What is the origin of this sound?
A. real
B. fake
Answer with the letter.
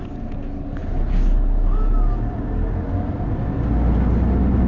A